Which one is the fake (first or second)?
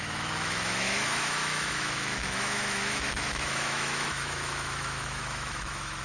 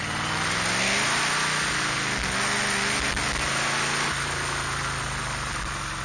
first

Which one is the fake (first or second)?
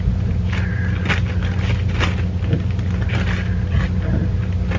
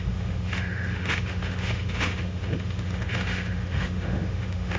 second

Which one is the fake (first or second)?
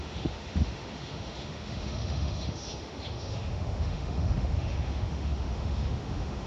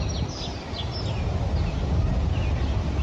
first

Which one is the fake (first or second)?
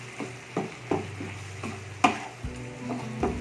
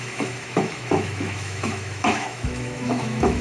second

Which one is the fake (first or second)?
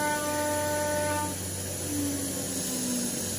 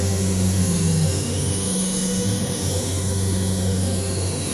second